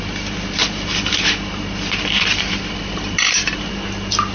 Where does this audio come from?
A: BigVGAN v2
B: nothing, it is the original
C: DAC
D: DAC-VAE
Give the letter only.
B